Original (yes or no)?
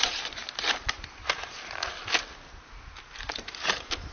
yes